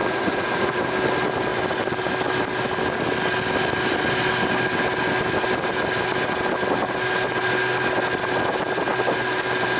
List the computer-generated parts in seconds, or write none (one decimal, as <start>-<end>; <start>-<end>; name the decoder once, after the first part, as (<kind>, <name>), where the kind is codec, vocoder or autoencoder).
0.0-0.8 (vocoder, Vocos)